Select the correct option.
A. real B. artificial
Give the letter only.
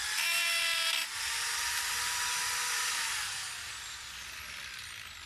A